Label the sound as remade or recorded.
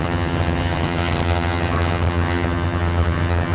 remade